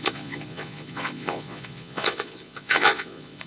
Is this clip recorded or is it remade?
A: remade